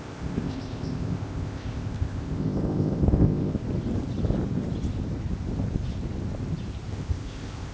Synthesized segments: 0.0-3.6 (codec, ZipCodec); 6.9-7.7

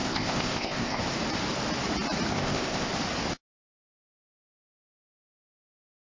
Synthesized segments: 0.0-1.0 (codec, ZipCodec); 2.3-2.9

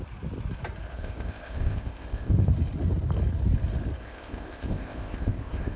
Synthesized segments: 0.9-2.5 (codec, ZipCodec); 4.0-5.8

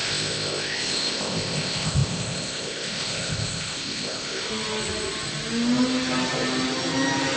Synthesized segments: 0.0-4.5 (codec, ZipCodec)

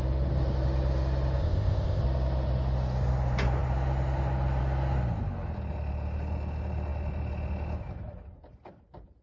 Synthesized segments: 1.4-2.0 (codec, ZipCodec)